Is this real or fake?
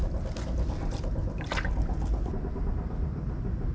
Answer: real